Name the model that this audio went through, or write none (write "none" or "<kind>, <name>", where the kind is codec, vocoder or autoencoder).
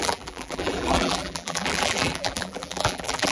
vocoder, BigVGAN v2